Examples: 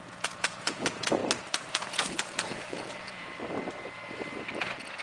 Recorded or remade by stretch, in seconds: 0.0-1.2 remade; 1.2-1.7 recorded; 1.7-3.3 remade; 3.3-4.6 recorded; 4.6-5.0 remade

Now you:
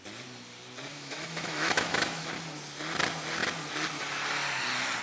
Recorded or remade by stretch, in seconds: 0.0-0.9 recorded; 0.9-2.3 remade; 2.3-5.0 recorded

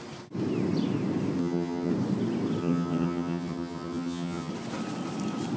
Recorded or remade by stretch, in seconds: 0.0-1.4 recorded; 1.4-1.9 remade; 1.9-2.6 recorded; 2.6-4.5 remade; 4.5-5.6 recorded

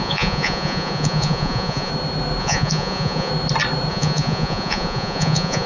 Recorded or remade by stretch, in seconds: 0.0-1.9 remade; 1.9-2.4 recorded; 2.4-3.3 remade; 3.3-3.9 recorded; 3.9-5.7 remade

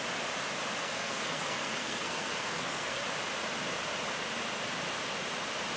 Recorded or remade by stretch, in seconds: 0.0-0.8 recorded; 0.8-3.0 remade; 3.0-5.8 recorded

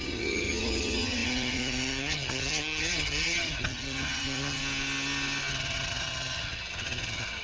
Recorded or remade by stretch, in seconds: 0.0-4.6 remade; 4.6-5.5 recorded; 5.5-7.4 remade

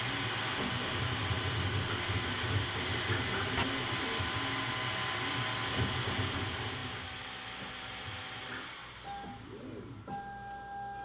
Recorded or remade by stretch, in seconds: 0.0-11.0 recorded

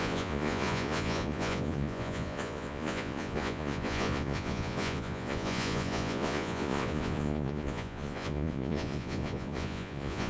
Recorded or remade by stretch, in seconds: 0.0-10.3 remade